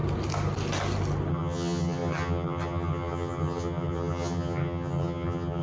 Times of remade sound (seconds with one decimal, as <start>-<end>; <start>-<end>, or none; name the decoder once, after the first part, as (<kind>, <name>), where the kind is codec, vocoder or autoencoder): 1.3-5.6 (vocoder, HiFi-GAN)